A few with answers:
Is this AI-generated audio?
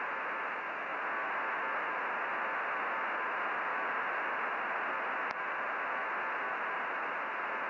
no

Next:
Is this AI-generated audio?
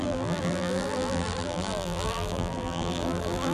yes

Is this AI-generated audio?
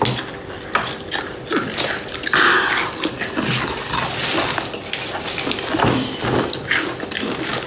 no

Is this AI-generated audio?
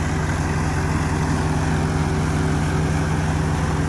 no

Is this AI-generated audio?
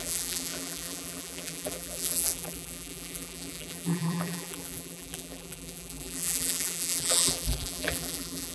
yes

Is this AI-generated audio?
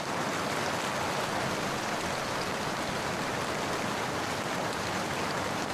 no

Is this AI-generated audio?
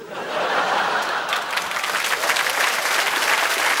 yes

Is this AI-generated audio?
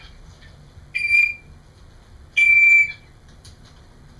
yes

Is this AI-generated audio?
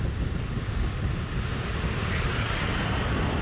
no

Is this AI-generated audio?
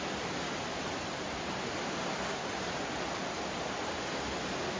yes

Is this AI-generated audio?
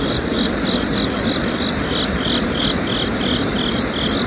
no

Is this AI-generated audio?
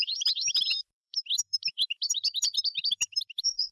yes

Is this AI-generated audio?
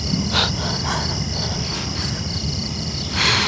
yes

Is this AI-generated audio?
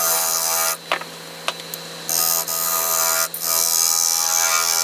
no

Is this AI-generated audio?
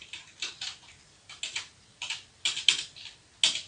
no